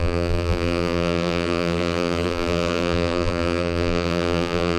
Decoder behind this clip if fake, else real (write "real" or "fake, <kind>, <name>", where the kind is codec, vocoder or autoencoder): fake, vocoder, BigVGAN v2